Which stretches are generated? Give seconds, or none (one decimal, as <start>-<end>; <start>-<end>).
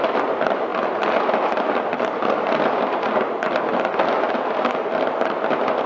none